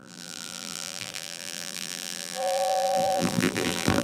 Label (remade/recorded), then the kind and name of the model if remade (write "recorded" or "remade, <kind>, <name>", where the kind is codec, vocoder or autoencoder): remade, vocoder, BigVGAN v2